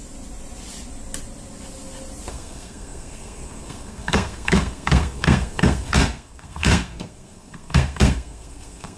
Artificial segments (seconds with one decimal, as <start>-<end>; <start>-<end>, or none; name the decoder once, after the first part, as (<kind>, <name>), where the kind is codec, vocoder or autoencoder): 2.3-9.0 (codec, SNAC)